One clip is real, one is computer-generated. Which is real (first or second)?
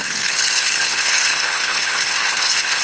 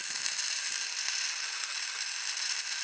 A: second